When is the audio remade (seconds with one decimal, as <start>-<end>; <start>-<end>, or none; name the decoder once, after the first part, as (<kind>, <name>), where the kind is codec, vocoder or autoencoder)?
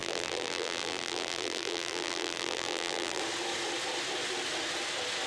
0.0-3.2 (vocoder, BigVGAN v2)